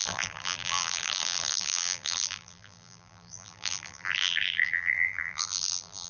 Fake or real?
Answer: fake